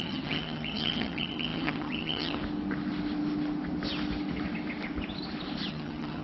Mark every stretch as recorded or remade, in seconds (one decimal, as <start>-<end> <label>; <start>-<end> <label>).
0.0-2.4 remade; 2.4-5.7 recorded; 5.7-6.2 remade